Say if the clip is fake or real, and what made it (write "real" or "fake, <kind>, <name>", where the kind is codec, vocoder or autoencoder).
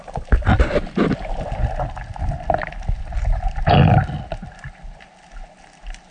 real